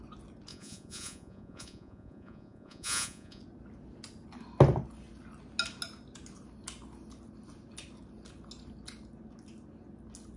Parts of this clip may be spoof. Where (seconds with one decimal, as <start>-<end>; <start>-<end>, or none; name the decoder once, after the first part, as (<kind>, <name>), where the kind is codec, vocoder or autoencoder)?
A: 0.5-3.4 (vocoder, Vocos)

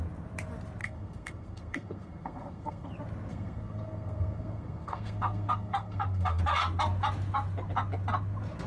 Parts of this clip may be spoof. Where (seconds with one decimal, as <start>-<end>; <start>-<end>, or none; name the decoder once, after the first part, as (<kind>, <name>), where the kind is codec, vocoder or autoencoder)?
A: 0.8-2.9 (codec, SNAC); 3.3-6.4